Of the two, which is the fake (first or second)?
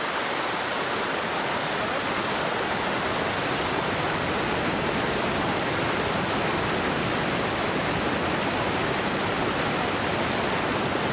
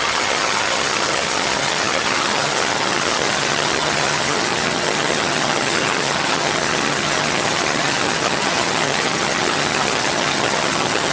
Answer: second